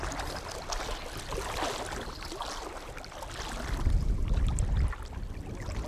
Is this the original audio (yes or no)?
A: yes